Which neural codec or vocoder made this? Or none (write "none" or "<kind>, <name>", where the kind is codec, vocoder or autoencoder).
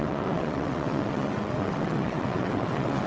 vocoder, WaveNeXt